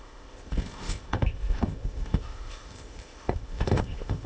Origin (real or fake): fake